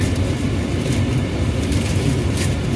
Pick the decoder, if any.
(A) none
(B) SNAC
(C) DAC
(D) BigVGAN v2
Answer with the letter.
A